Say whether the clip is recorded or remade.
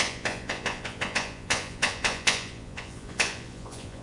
remade